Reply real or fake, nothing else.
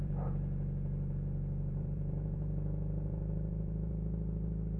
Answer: fake